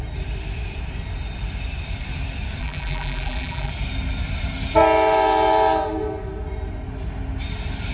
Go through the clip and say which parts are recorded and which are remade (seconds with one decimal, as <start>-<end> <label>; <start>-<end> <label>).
0.0-2.6 recorded; 2.6-3.7 remade; 3.7-7.9 recorded